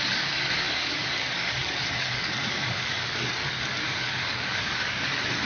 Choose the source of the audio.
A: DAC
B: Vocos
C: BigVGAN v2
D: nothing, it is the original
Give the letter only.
A